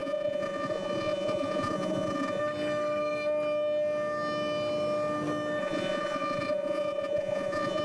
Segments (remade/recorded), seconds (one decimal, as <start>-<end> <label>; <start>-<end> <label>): 0.0-2.4 remade; 2.4-5.6 recorded; 5.6-7.8 remade